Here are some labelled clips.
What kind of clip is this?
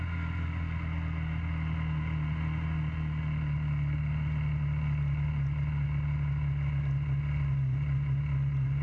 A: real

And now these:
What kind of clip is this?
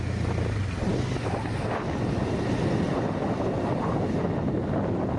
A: real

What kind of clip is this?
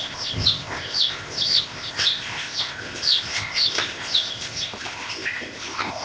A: fake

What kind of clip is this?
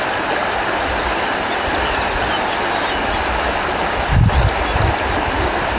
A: real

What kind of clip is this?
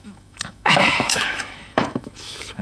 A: fake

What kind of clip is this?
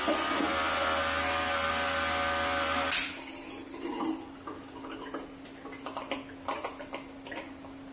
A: real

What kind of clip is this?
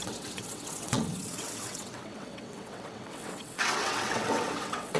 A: fake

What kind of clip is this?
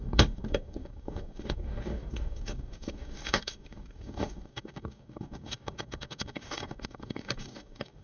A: fake